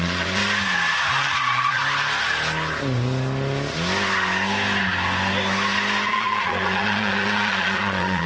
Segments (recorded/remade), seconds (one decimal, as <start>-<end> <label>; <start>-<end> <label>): 0.0-0.4 remade; 0.4-1.1 recorded; 1.1-1.8 remade; 1.8-6.1 recorded; 6.1-8.3 remade